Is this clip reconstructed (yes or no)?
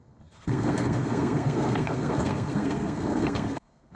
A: yes